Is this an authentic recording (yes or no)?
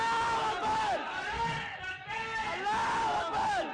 yes